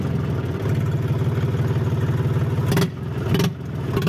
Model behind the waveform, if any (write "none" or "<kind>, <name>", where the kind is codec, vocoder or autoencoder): none